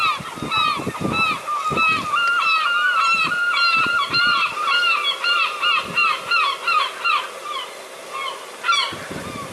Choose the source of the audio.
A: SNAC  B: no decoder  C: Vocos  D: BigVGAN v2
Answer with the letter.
B